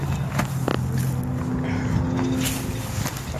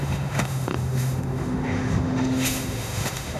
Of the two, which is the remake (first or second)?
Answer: second